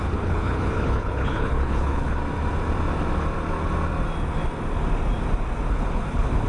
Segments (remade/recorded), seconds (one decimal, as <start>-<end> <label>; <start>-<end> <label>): 0.0-2.2 remade; 2.2-5.7 recorded; 5.7-6.5 remade